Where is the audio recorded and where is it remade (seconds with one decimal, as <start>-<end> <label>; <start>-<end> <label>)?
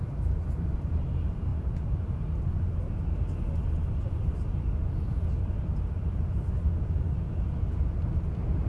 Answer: 0.0-1.5 recorded; 1.5-4.9 remade; 4.9-8.7 recorded